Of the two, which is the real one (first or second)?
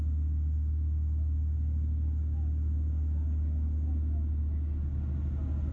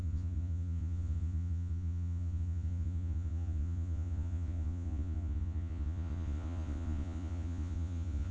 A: first